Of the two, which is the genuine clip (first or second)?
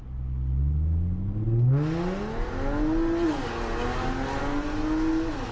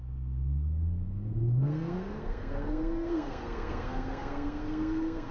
first